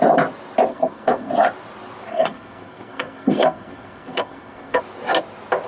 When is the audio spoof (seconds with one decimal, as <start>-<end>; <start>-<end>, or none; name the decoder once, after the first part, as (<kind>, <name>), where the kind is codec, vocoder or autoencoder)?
0.7-1.3 (codec, SNAC); 2.1-4.8